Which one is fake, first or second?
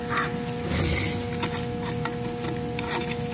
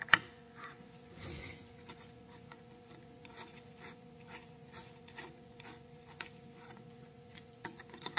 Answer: second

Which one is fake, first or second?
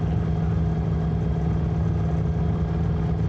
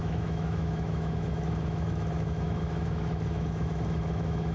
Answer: second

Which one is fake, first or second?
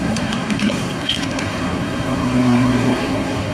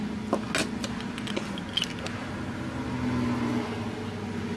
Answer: first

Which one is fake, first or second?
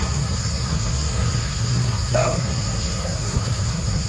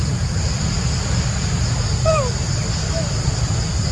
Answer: first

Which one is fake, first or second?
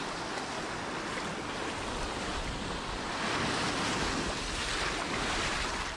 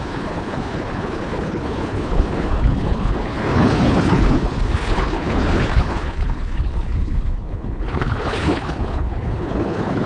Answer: second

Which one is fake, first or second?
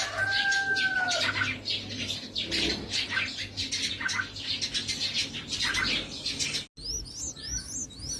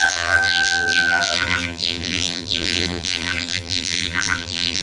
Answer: second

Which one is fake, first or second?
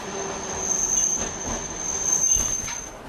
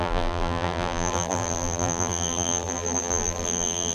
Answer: second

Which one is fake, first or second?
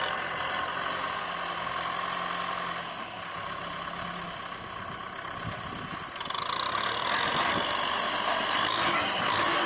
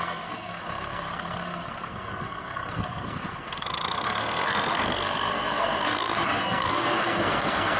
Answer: second